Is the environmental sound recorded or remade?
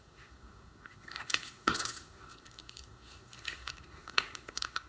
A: remade